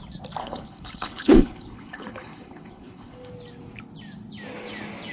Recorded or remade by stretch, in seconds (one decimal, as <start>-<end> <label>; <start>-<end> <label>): 0.0-0.4 recorded; 0.4-3.3 remade; 3.3-5.1 recorded